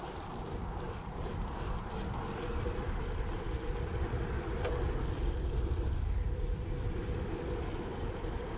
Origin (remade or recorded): remade